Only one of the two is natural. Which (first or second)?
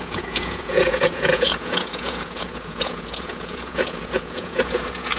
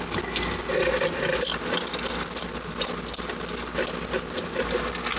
second